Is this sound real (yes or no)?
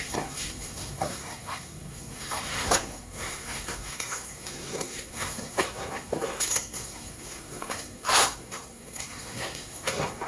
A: no